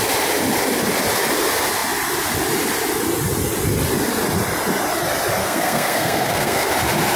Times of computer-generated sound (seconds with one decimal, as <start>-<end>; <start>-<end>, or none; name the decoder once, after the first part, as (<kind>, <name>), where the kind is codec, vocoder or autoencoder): 5.4-6.7 (codec, SNAC)